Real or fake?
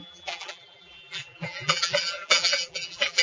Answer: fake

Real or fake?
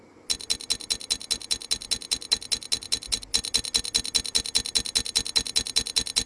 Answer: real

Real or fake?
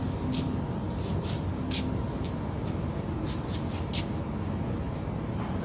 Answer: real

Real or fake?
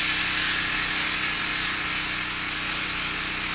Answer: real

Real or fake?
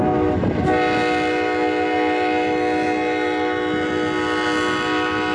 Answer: real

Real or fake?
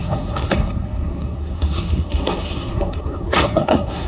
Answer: fake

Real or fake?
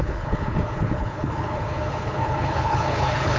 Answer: fake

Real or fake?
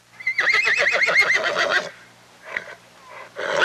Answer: real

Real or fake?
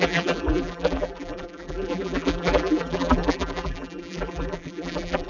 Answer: fake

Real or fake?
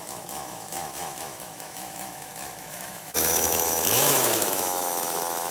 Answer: fake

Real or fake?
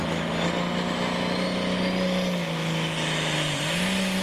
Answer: real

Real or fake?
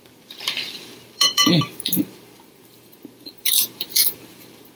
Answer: fake